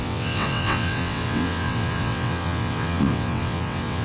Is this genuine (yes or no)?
no